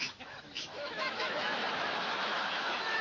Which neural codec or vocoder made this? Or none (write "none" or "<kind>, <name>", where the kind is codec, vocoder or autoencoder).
autoencoder, DAC-VAE